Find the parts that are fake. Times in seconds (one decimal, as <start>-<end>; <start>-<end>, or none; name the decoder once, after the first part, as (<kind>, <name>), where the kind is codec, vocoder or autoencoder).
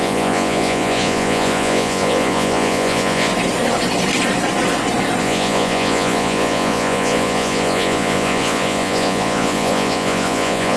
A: 0.0-3.3 (vocoder, Vocos); 5.2-10.8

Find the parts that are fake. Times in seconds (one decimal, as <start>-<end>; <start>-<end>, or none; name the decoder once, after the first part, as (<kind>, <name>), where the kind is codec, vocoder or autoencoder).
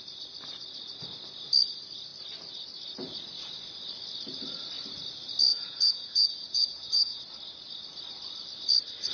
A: 5.5-7.2 (vocoder, Vocos)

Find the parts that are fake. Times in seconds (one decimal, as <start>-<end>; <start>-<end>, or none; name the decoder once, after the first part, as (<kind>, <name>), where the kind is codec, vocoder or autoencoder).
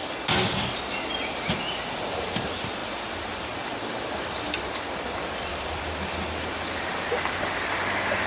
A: none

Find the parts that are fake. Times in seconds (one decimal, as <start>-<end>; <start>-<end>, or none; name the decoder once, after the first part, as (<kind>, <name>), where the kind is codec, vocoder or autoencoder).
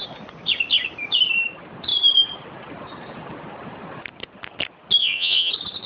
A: 5.0-5.5 (vocoder, Vocos)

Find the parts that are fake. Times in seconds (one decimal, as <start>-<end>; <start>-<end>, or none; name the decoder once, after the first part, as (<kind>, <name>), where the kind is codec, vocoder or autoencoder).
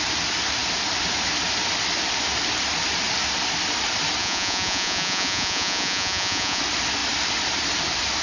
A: 4.2-6.6 (vocoder, Vocos)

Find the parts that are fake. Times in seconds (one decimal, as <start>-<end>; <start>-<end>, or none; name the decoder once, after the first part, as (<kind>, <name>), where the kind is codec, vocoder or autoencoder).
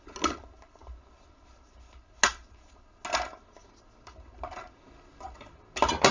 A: none